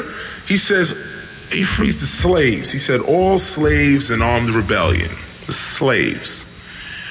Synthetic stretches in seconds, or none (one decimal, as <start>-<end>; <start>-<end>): 0.9-1.9